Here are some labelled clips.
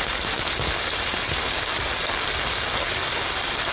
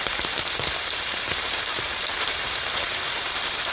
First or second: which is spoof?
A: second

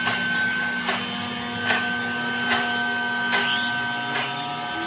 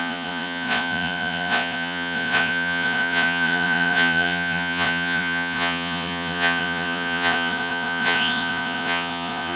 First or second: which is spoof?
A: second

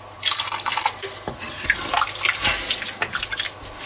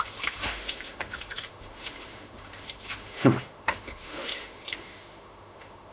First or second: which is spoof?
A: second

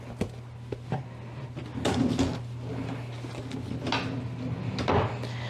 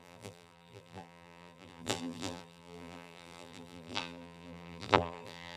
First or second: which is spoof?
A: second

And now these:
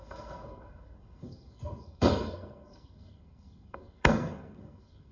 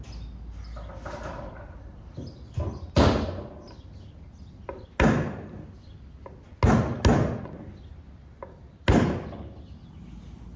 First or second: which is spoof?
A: first